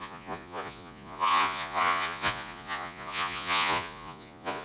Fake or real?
fake